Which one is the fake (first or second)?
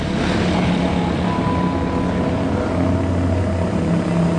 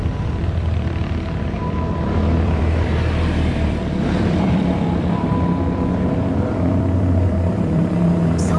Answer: second